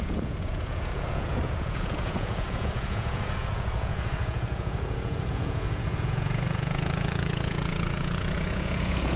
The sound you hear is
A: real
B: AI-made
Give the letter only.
B